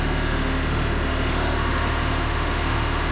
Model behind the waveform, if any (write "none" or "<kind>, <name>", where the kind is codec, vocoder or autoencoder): autoencoder, DAC-VAE